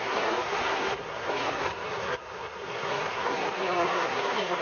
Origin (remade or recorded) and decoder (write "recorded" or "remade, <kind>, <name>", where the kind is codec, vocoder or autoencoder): remade, codec, SNAC